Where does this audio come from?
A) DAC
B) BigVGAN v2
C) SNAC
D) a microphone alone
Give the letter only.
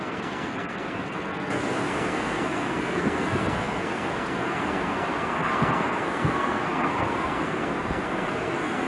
C